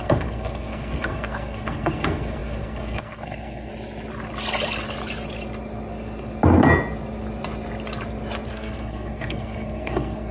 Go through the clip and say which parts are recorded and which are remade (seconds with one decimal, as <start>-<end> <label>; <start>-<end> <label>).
0.0-3.7 remade; 3.7-8.5 recorded; 8.5-10.3 remade